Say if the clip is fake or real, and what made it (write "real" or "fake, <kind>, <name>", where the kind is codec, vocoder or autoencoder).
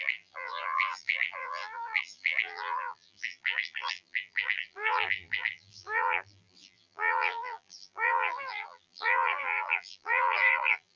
fake, vocoder, BigVGAN v2